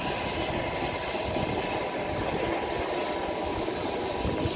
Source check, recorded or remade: recorded